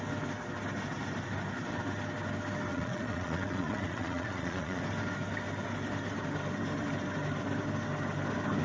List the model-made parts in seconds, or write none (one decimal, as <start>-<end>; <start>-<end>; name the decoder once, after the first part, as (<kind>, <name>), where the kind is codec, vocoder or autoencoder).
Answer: 2.7-4.8 (vocoder, Vocos)